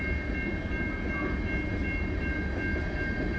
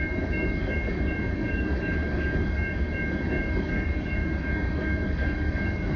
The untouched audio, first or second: first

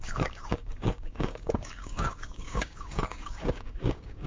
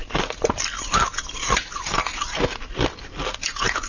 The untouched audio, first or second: second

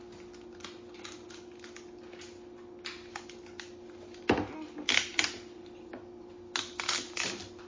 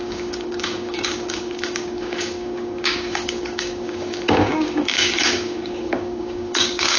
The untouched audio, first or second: first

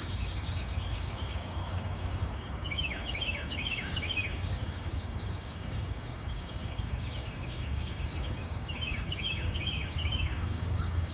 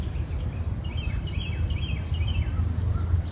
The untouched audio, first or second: second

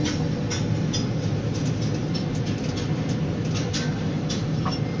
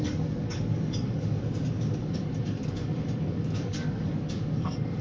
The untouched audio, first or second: first